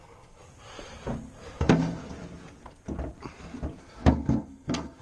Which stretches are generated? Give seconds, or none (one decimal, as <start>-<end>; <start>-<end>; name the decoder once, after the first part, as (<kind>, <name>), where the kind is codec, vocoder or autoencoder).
0.0-0.4 (codec, SNAC); 1.6-2.0; 3.8-5.0